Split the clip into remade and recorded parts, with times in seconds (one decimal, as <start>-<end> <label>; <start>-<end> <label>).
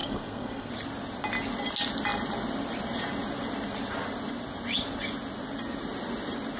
0.0-0.7 remade; 0.7-6.6 recorded